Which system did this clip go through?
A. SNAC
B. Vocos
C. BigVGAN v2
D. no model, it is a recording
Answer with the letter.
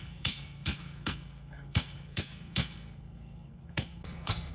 A